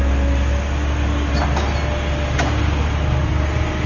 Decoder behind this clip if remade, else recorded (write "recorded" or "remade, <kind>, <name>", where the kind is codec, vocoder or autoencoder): recorded